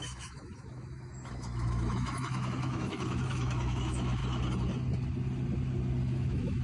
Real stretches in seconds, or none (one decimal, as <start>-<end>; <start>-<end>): 4.2-6.1